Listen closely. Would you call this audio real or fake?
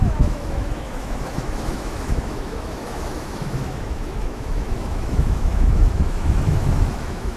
fake